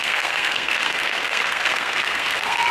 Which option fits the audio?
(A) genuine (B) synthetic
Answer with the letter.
B